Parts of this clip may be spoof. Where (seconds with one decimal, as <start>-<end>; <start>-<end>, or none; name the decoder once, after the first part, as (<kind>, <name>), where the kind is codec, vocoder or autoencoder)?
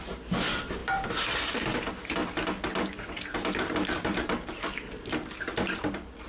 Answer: 0.0-2.2 (vocoder, BigVGAN v2); 2.9-6.3